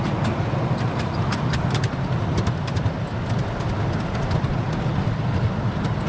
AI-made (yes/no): no